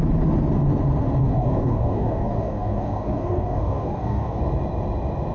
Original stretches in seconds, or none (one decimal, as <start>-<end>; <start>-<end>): 0.0-1.2; 4.4-5.3